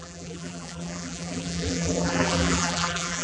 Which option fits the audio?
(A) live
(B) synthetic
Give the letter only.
B